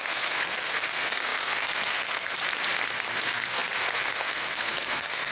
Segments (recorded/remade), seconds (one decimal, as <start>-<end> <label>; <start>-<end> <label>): 0.0-2.4 remade; 2.4-3.1 recorded; 3.1-5.3 remade